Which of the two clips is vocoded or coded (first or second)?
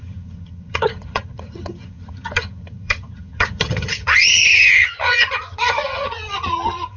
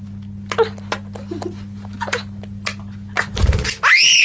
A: first